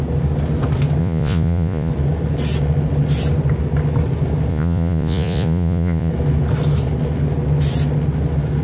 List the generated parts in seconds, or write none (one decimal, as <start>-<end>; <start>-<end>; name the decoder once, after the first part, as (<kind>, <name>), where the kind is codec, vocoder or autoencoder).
1.0-1.9 (vocoder, Vocos); 4.5-6.1

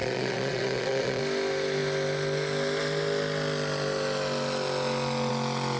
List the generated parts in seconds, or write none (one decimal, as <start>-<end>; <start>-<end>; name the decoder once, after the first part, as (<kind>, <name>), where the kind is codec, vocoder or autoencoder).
0.0-1.2 (vocoder, Vocos)

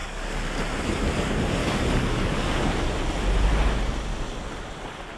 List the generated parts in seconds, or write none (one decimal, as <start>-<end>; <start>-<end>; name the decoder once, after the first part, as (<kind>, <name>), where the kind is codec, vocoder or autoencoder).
0.0-0.6 (codec, DAC); 1.6-2.9

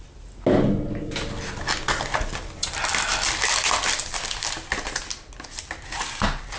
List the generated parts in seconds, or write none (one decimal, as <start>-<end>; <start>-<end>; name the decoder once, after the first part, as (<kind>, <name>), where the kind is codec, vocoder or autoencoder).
none

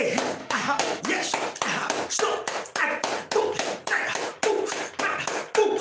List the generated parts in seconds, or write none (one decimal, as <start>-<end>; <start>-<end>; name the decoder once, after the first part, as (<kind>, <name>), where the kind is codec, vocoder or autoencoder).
0.4-1.0 (autoencoder, DAC-VAE)

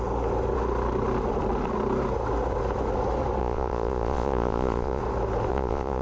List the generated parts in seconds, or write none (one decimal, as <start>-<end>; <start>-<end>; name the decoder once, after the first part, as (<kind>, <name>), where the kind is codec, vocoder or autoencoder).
3.4-5.0 (vocoder, Vocos); 5.5-6.0

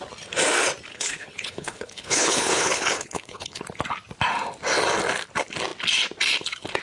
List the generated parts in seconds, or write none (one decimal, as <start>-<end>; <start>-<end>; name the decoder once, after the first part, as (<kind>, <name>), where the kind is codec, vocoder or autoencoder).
0.9-3.6 (codec, HILCodec)

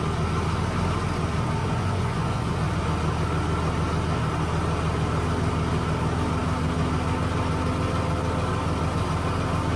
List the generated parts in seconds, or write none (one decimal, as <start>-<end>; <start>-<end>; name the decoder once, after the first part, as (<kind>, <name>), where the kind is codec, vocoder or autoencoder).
1.6-2.8 (vocoder, Vocos)